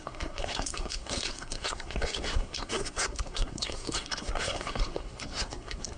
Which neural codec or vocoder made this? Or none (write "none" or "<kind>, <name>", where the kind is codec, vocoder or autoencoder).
codec, SNAC